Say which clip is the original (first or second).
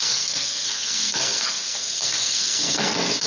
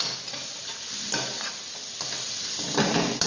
second